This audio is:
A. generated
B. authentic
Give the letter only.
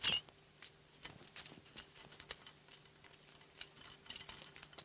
B